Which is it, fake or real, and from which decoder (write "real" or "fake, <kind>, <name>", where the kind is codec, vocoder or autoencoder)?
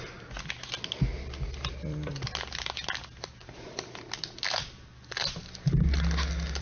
real